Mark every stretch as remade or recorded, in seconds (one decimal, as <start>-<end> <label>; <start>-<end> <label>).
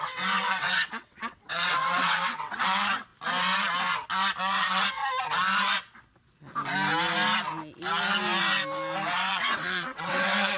0.0-3.1 remade; 3.1-4.4 recorded; 4.4-5.0 remade; 5.0-9.3 recorded; 9.3-10.6 remade